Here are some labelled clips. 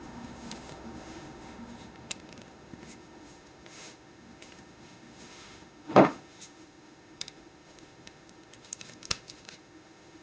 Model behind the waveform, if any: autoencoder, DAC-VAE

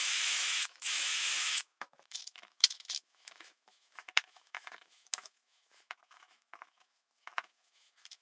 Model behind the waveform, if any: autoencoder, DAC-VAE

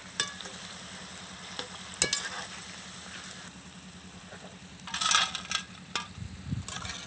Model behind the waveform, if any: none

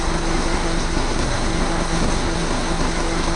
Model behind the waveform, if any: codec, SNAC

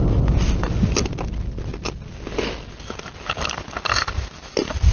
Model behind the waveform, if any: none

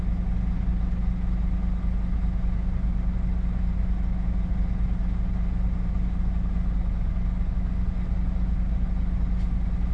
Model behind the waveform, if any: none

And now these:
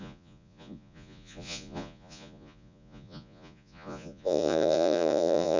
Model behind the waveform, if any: vocoder, Vocos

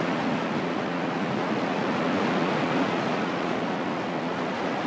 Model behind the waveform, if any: vocoder, Vocos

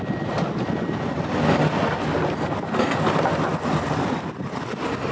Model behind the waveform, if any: none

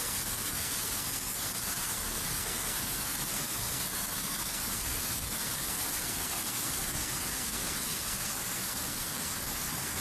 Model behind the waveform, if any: codec, SNAC